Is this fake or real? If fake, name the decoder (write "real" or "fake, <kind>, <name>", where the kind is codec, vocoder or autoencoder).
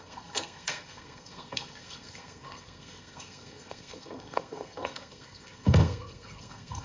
fake, codec, SNAC